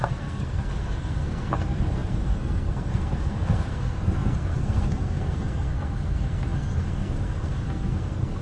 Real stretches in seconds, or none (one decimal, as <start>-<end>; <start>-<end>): none

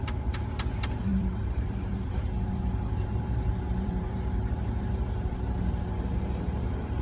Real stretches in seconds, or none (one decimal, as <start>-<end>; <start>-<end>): none